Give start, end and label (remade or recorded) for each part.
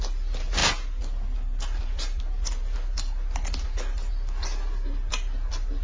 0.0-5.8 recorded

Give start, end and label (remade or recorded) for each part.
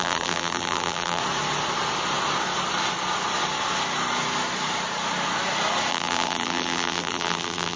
0.0-1.2 remade; 1.2-5.9 recorded; 5.9-7.8 remade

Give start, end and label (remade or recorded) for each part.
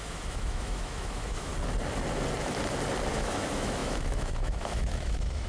0.0-1.5 remade; 1.5-3.1 recorded; 3.1-5.5 remade